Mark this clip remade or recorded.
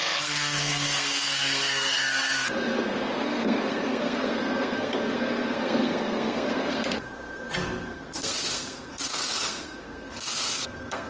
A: remade